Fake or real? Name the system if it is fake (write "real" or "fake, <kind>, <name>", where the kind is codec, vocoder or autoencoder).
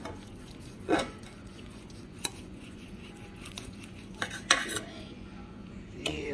fake, vocoder, Vocos